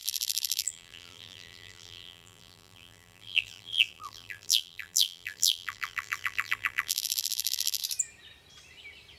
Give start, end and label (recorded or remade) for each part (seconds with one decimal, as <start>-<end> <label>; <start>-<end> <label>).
0.0-7.8 remade; 7.8-9.2 recorded